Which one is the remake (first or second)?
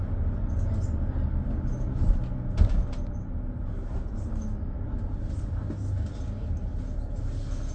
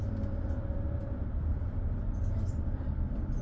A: second